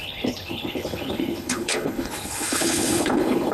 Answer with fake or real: fake